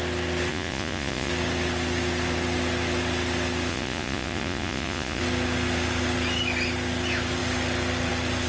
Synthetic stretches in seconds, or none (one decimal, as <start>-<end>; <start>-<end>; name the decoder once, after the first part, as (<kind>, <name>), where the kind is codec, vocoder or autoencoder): 0.5-1.3 (vocoder, Vocos); 3.7-5.2